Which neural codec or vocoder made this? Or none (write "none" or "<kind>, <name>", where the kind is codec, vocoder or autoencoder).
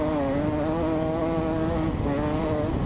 none